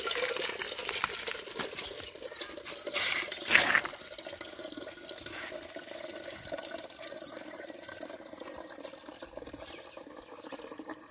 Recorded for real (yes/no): yes